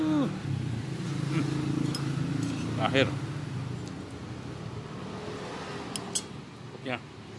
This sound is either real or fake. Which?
real